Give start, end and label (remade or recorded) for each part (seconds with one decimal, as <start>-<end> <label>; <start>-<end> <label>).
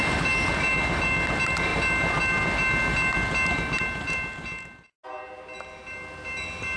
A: 0.0-6.8 recorded